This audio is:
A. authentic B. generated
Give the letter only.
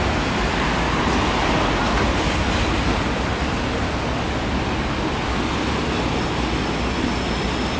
A